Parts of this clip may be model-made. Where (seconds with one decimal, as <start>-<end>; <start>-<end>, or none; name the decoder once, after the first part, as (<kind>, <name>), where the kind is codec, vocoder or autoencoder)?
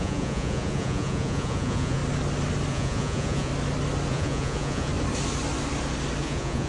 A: 0.0-2.0 (vocoder, Vocos); 2.7-3.5; 4.1-4.9; 6.2-6.7